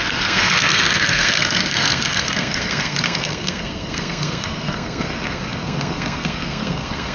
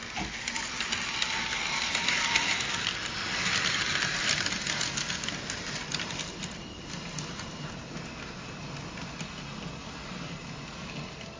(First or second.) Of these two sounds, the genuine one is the second